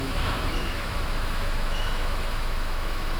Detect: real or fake fake